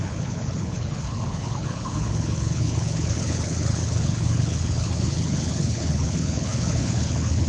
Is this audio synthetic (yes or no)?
yes